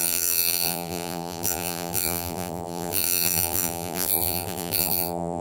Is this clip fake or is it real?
fake